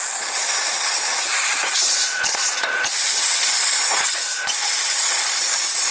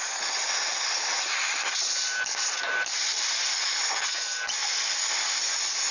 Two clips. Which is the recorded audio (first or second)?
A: second